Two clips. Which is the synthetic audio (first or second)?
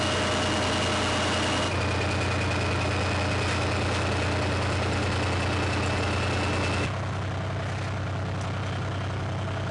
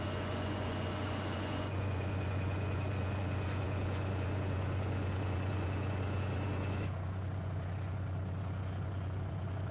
second